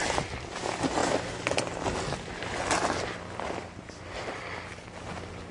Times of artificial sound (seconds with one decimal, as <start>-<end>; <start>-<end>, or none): none